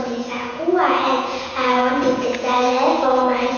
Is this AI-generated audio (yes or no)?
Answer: yes